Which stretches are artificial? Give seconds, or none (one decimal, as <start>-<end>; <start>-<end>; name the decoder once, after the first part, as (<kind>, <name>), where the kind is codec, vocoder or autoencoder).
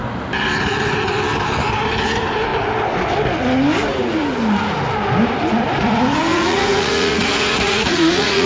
6.3-8.5 (vocoder, Vocos)